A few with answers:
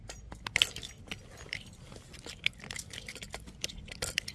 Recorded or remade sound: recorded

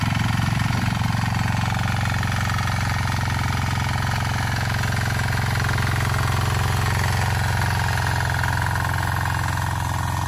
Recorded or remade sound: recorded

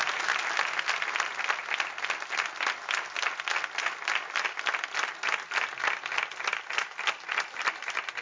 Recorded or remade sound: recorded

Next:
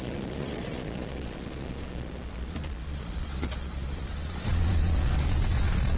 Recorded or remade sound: remade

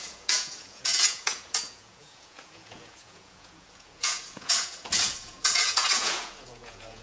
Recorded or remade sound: remade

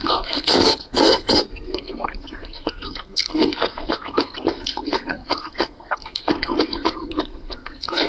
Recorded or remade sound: remade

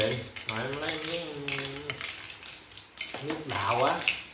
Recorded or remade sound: recorded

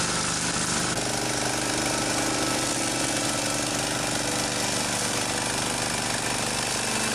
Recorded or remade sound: recorded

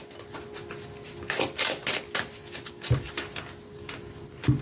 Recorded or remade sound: recorded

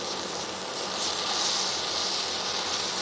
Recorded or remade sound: recorded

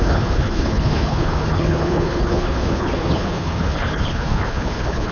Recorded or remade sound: remade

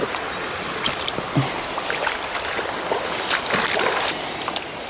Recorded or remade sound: recorded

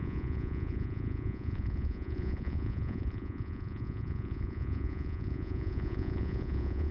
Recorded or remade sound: remade